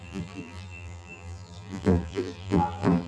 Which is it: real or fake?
fake